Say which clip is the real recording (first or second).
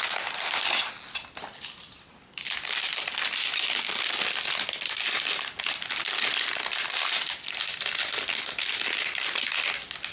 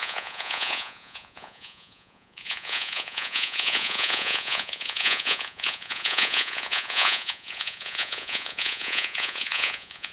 first